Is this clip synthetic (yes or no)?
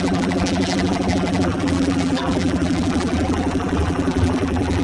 yes